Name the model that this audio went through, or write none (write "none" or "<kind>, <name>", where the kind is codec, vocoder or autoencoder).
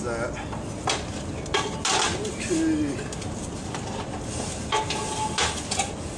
none